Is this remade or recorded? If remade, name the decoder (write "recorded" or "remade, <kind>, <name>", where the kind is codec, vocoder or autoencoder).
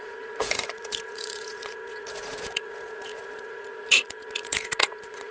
remade, vocoder, Vocos